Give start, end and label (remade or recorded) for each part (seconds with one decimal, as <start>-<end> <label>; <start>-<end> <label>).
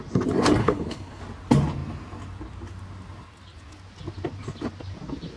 0.0-0.6 recorded; 0.6-1.2 remade; 1.2-5.4 recorded